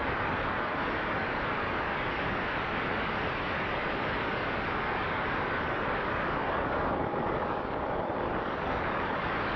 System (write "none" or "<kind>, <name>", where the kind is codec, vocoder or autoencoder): codec, DAC